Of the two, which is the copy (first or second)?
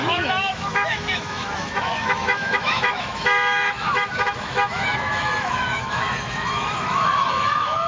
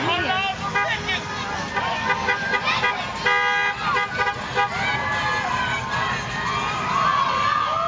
first